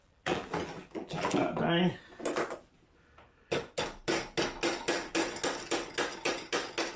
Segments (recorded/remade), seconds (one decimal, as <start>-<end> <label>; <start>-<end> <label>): 0.0-1.4 remade; 1.4-4.8 recorded; 4.8-5.2 remade; 5.2-7.0 recorded